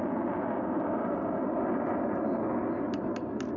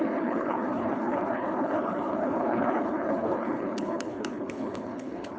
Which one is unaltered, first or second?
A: first